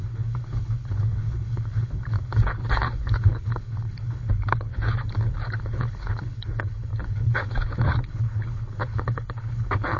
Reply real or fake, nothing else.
fake